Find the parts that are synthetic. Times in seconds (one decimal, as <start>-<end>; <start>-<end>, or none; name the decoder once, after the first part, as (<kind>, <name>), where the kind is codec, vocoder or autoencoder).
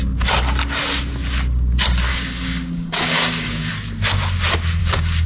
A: 2.1-3.7 (codec, DAC); 4.8-5.3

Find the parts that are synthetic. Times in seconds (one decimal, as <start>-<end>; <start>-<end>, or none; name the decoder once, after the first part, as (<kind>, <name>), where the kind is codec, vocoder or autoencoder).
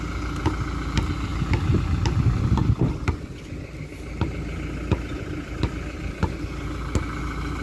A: none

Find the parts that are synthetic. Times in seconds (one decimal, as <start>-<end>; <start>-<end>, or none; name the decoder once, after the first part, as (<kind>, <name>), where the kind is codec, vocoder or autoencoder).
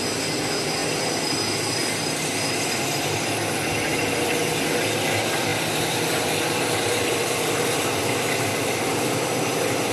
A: 3.9-4.7 (vocoder, BigVGAN v2); 5.5-8.0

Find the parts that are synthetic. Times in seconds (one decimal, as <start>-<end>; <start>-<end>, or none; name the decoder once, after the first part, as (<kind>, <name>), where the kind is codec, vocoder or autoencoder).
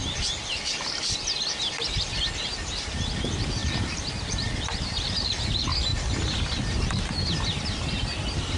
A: 0.0-2.2 (vocoder, BigVGAN v2); 3.6-5.4; 5.9-6.7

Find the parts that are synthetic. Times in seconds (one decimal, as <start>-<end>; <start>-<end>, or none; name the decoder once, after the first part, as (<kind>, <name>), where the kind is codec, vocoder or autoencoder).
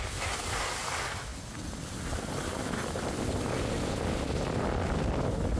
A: none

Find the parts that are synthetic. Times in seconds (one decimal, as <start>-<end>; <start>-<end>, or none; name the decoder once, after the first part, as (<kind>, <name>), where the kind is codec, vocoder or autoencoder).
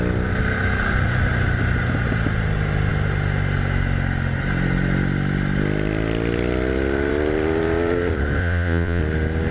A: 8.4-9.0 (vocoder, Vocos)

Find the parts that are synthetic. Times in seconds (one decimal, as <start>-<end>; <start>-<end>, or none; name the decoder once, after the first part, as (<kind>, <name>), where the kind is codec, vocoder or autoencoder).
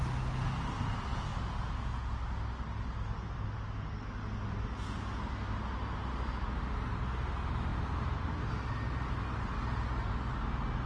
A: 1.1-2.1 (vocoder, Vocos)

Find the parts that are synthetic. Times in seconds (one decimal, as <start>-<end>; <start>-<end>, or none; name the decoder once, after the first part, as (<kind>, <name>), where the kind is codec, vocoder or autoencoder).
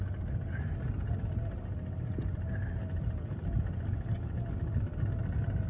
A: none